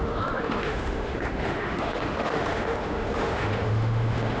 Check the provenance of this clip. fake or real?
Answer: fake